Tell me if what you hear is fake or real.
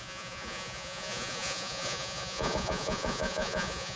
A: fake